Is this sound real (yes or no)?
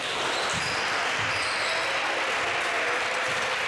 yes